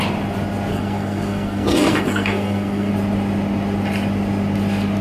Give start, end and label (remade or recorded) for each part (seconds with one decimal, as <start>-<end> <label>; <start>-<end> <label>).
0.0-0.7 recorded; 0.7-2.9 remade; 2.9-5.0 recorded